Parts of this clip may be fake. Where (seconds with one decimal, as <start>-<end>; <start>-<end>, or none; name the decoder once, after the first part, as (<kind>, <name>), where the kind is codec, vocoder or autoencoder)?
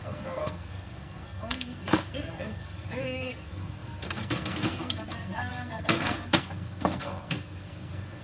0.0-8.2 (codec, SNAC)